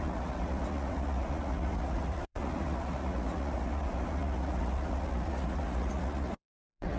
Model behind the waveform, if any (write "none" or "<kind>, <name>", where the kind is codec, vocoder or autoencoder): vocoder, Vocos